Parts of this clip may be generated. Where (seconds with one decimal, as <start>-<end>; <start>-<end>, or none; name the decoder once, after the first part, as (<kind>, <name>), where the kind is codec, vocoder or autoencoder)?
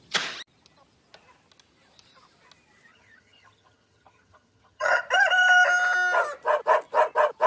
2.9-5.0 (vocoder, HiFi-GAN)